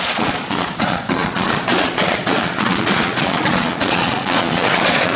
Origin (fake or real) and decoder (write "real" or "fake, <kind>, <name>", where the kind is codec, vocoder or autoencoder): fake, vocoder, Vocos